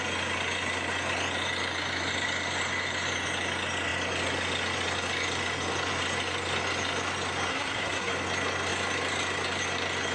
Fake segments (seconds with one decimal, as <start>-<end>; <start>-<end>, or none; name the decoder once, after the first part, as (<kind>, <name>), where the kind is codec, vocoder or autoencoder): 7.5-8.1 (codec, SNAC)